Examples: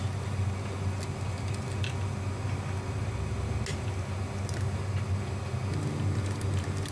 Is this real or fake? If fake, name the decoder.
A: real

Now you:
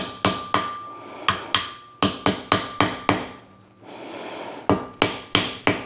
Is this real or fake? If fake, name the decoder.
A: real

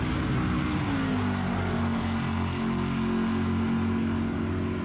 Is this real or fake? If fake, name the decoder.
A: real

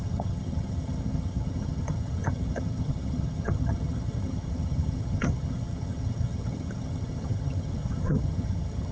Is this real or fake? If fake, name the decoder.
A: fake, vocoder, HiFi-GAN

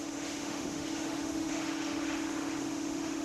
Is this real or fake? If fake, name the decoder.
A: fake, autoencoder, DAC-VAE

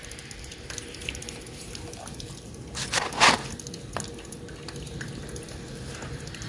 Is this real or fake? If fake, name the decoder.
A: real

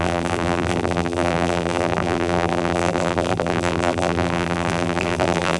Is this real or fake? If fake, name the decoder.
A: fake, vocoder, BigVGAN v2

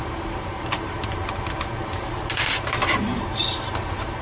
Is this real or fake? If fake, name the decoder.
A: fake, vocoder, BigVGAN v2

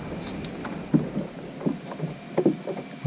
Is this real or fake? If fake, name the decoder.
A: real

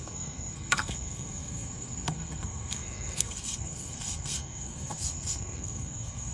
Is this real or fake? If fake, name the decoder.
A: fake, codec, SNAC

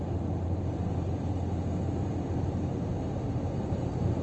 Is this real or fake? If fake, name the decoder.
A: real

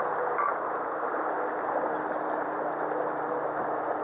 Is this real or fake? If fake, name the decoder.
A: real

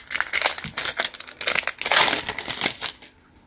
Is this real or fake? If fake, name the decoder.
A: real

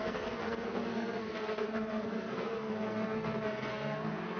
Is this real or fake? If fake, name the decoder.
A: fake, codec, SNAC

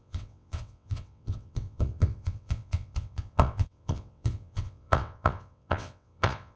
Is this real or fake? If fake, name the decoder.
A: fake, vocoder, WaveNeXt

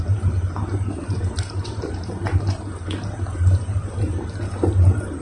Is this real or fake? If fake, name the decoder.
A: fake, vocoder, BigVGAN v2